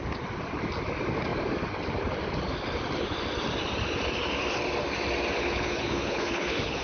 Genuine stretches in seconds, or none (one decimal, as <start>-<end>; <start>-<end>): 0.0-5.4